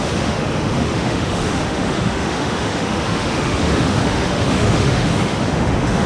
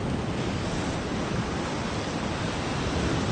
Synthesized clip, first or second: first